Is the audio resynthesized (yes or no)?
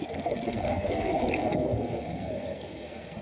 yes